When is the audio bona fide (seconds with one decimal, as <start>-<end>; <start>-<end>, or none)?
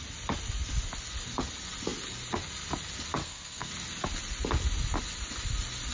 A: 0.0-3.2; 3.7-5.9